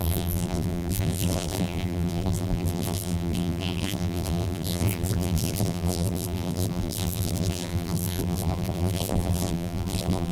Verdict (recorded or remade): remade